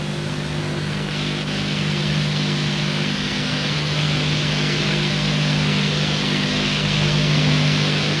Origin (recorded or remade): remade